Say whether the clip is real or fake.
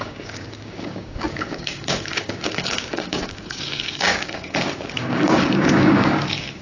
fake